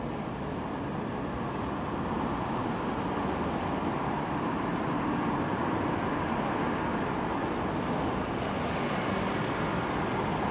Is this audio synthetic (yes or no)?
no